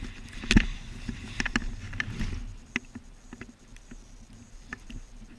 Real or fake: real